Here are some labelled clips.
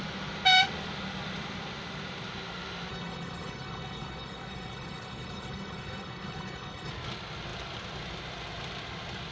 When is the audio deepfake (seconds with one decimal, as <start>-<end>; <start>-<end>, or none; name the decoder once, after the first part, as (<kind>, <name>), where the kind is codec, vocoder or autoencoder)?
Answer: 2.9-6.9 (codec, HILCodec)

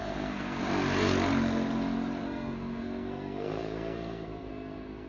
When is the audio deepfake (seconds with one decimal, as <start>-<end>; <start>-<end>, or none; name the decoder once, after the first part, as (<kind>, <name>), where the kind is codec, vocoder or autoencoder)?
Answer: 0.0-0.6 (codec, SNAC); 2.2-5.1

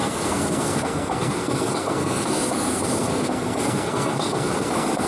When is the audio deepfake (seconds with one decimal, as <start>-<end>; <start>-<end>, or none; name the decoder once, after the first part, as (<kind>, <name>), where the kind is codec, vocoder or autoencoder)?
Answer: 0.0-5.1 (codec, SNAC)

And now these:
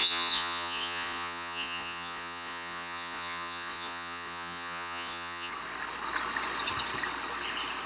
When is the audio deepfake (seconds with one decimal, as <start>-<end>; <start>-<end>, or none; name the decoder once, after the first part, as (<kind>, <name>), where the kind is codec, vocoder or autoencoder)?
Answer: 0.0-5.5 (vocoder, Vocos)